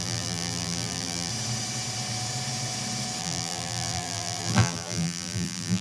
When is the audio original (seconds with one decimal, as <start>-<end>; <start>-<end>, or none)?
1.3-3.2